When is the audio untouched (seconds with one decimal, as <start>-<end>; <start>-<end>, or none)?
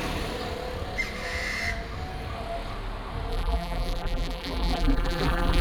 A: 0.0-3.3